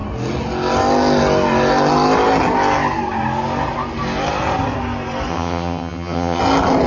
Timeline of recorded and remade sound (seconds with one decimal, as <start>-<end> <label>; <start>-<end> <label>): 0.0-5.3 recorded; 5.3-6.4 remade; 6.4-6.9 recorded